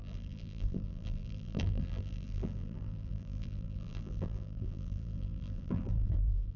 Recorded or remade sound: remade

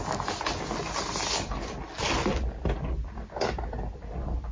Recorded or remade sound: recorded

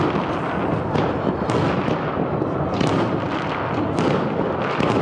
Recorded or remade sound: recorded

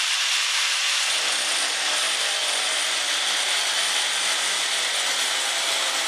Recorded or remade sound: recorded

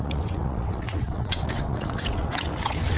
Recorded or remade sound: remade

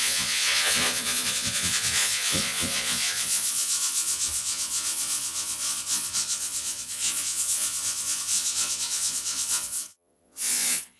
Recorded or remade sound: remade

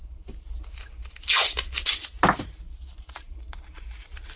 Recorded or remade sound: recorded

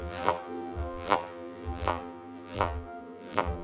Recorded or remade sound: remade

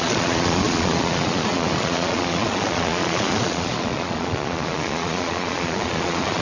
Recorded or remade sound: remade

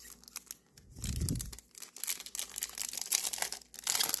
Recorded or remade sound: recorded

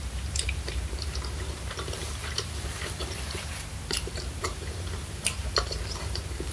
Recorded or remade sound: remade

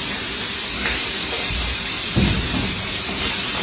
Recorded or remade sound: remade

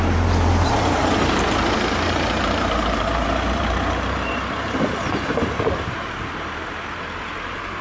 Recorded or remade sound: remade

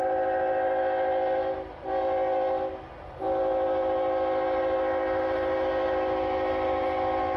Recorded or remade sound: recorded